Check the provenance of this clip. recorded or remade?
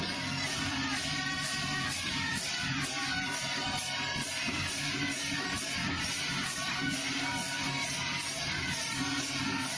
remade